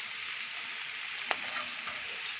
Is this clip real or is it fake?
real